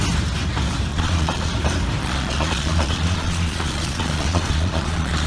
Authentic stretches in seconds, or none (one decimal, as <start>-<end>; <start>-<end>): 0.0-0.9; 1.5-2.0